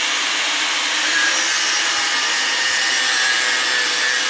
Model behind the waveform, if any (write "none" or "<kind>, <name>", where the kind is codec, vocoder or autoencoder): none